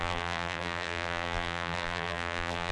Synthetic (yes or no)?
yes